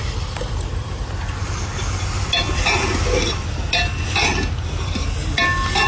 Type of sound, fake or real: real